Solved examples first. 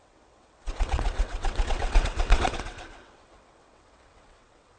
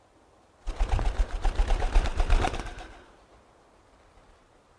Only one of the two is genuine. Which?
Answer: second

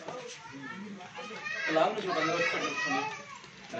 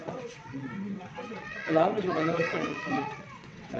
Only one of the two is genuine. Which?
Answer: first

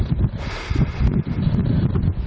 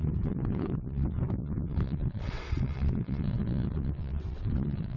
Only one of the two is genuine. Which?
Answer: first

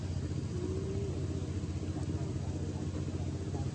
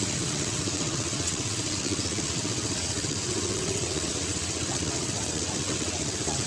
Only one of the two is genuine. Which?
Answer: first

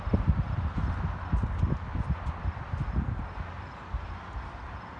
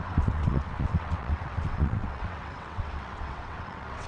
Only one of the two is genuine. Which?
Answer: first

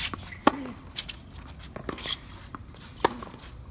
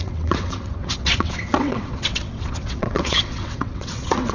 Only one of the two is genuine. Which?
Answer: first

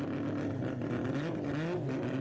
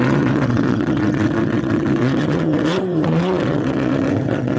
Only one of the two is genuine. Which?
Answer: first